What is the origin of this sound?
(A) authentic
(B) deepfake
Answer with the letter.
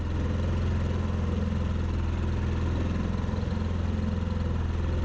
A